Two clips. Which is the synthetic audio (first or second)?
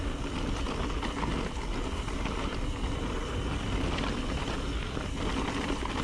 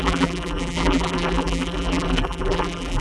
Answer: second